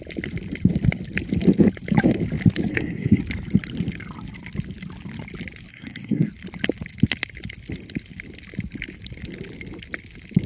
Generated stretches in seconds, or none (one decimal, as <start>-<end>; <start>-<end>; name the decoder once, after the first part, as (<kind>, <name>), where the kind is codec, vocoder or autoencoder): 2.7-3.2 (codec, SNAC); 5.7-6.3